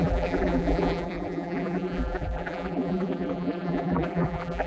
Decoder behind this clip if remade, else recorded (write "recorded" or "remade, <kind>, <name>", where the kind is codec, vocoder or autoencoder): remade, vocoder, BigVGAN v2